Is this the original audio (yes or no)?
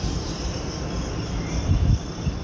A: yes